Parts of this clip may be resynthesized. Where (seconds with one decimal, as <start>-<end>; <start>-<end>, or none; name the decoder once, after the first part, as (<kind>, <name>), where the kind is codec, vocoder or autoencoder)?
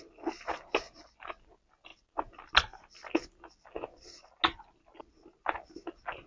none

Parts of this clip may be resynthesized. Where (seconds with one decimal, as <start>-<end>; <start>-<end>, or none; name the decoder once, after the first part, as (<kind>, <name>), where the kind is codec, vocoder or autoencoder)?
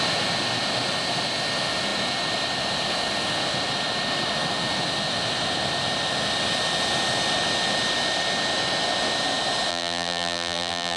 9.7-11.0 (vocoder, BigVGAN v2)